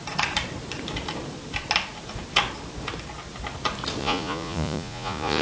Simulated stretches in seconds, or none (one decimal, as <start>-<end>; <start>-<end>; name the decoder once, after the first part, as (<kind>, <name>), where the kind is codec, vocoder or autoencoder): 4.0-5.4 (vocoder, Vocos)